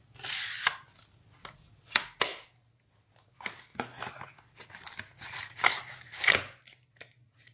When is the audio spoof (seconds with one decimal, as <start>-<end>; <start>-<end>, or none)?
none